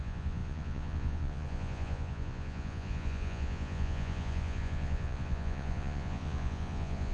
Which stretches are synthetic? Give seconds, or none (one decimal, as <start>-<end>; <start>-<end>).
0.0-7.1